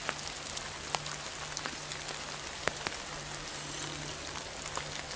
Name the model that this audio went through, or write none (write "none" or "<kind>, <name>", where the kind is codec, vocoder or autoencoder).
none